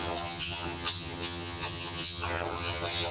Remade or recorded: remade